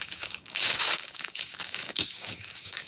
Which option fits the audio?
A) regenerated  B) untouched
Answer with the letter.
A